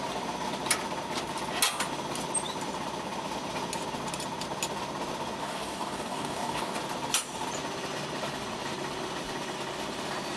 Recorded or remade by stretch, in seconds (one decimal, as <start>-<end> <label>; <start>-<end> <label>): 0.0-5.4 recorded; 5.4-6.8 remade; 6.8-10.4 recorded